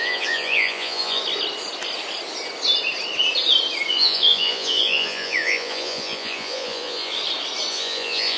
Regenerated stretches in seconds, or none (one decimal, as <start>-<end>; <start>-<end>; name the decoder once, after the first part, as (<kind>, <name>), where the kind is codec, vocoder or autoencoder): 0.0-1.2 (vocoder, Vocos); 3.9-7.1; 7.7-8.4